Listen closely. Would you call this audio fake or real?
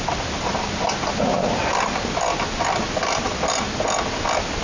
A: real